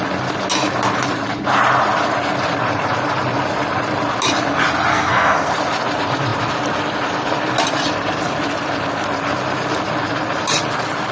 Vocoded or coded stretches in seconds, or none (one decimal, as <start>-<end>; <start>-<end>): 4.9-5.5